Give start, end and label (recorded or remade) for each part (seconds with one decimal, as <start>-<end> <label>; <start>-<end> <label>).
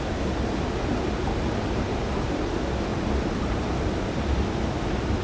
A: 0.0-5.2 recorded